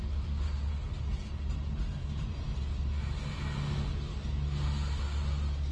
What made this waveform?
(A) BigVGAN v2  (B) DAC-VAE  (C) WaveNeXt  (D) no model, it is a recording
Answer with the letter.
D